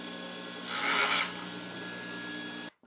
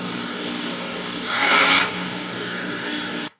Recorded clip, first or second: first